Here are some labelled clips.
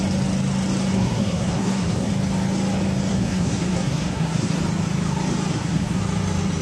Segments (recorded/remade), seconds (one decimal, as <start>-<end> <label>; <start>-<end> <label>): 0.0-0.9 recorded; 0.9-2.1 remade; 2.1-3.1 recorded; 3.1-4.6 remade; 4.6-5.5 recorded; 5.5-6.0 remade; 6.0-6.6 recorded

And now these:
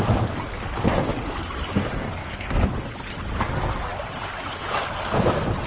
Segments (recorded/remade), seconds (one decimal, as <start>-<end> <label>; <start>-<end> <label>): 0.0-2.2 recorded; 2.2-2.7 remade; 2.7-5.7 recorded

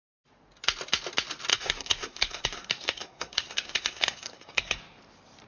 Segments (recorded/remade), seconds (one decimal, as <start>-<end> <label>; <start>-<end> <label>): 0.0-1.5 recorded; 1.5-4.8 remade; 4.8-5.5 recorded